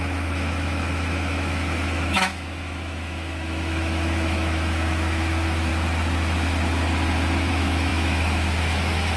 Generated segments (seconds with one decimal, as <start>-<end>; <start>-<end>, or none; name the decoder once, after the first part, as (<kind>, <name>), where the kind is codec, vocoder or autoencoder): 0.0-5.7 (autoencoder, DAC-VAE); 7.5-9.2